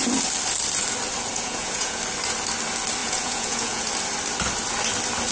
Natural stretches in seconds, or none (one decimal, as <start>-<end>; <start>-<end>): 0.0-1.3; 2.0-3.0; 3.8-5.3